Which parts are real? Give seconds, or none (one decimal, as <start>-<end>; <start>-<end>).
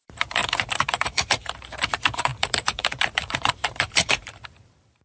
none